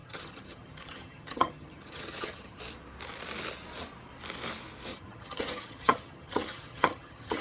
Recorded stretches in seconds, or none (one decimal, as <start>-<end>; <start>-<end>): 2.6-4.9